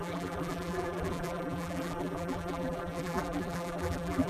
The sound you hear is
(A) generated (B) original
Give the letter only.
A